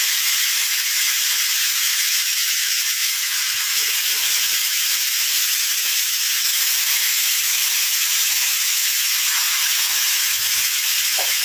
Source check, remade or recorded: remade